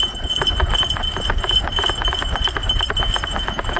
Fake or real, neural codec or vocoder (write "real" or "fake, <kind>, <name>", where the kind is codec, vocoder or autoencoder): real